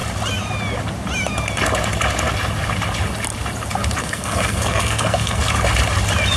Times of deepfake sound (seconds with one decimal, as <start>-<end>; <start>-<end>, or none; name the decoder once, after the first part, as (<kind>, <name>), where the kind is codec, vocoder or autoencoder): 4.0-5.4 (codec, SNAC)